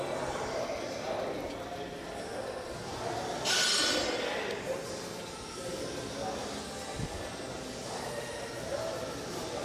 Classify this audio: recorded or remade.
recorded